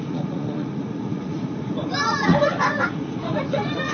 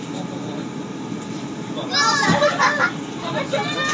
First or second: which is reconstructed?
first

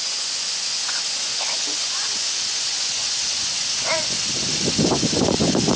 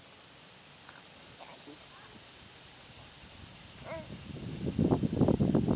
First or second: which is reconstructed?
first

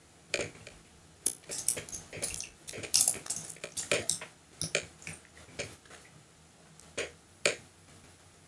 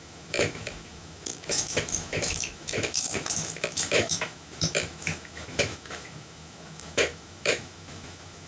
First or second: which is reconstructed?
second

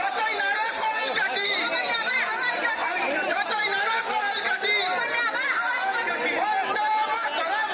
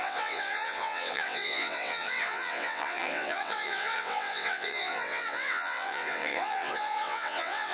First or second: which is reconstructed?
second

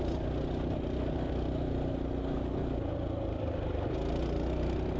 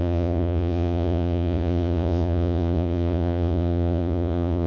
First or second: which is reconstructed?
second